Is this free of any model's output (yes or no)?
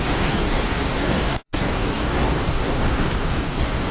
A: no